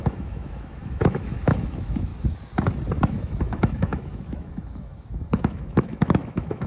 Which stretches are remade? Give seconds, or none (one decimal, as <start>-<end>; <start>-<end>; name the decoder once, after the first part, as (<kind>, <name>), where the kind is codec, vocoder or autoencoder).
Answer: 0.0-2.1 (autoencoder, DAC-VAE); 3.0-6.7

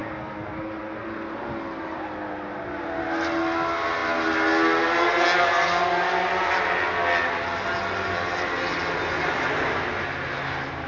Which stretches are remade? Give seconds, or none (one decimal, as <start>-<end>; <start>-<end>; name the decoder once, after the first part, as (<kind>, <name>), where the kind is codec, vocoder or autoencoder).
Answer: none

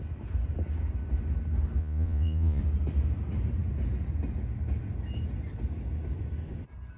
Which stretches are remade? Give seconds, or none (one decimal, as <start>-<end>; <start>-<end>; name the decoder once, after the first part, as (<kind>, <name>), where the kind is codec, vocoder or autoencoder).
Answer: 1.8-2.6 (vocoder, Vocos)

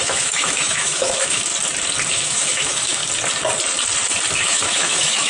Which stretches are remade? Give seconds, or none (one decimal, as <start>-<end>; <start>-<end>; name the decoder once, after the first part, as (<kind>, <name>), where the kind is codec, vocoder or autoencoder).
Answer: 0.0-1.5 (autoencoder, DAC-VAE); 2.1-3.0; 4.4-5.3

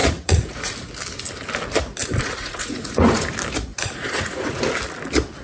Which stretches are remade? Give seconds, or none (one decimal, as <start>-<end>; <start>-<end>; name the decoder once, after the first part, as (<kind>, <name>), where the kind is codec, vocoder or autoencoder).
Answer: 0.0-0.7 (vocoder, Vocos); 2.0-3.3; 3.7-4.6